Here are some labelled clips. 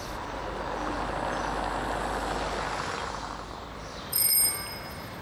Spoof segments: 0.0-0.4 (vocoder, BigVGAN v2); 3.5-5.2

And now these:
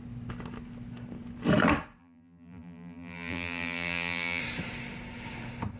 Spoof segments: 2.0-4.4 (vocoder, BigVGAN v2)

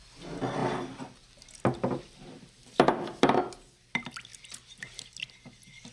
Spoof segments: 0.6-3.4 (vocoder, BigVGAN v2); 4.3-5.3